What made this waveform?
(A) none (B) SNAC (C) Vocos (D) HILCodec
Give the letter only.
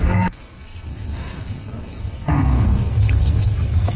B